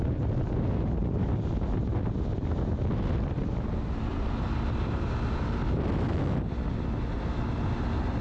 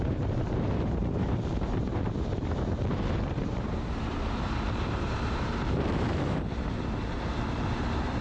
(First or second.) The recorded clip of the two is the first